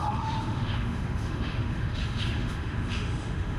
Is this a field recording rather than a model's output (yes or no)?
no